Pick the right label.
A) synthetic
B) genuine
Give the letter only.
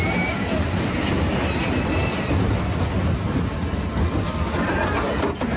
B